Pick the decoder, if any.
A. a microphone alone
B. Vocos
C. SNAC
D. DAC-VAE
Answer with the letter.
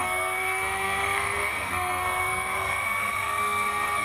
C